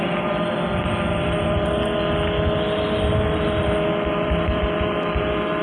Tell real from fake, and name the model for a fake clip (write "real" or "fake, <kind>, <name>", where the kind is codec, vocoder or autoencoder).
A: real